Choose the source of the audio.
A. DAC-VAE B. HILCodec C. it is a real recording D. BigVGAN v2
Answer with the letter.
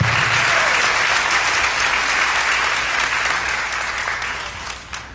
C